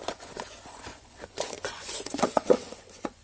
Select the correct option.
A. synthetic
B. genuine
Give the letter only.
A